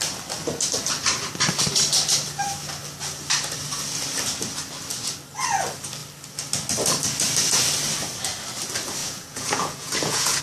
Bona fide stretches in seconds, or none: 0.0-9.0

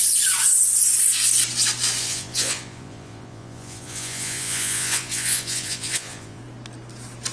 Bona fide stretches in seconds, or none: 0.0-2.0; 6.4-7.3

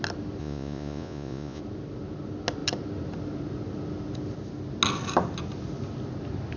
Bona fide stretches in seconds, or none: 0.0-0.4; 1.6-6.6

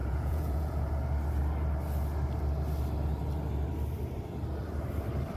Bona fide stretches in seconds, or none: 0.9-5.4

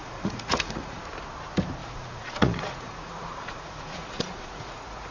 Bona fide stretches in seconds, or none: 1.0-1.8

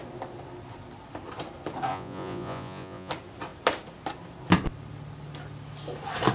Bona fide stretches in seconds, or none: 0.0-1.9; 3.1-6.3

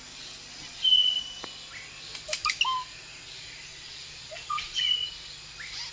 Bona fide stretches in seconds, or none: 0.0-0.6; 1.2-3.7; 5.1-5.9